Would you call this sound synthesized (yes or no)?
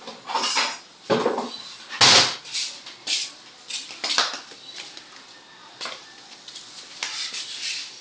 no